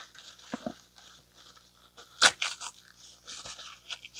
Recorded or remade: recorded